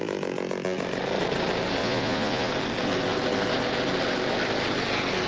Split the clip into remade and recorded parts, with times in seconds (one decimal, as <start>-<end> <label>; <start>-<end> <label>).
0.0-1.8 recorded; 1.8-2.5 remade; 2.5-5.3 recorded

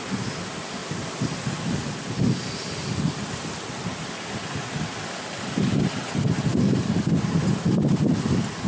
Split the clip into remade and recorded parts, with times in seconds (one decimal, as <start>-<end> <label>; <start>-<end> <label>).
0.0-8.7 recorded

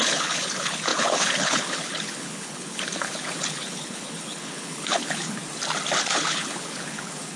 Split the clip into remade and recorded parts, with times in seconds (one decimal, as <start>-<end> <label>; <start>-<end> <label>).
0.0-5.4 remade; 5.4-6.0 recorded; 6.0-7.4 remade

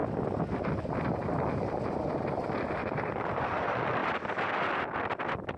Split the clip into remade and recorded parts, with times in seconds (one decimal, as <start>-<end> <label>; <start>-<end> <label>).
0.0-5.6 recorded

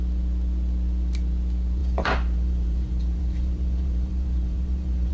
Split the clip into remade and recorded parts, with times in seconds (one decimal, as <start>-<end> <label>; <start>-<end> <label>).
0.0-1.8 recorded; 1.8-5.1 remade